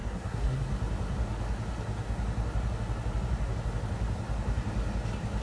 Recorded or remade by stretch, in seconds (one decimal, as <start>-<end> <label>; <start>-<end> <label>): 0.0-0.6 remade; 0.6-5.4 recorded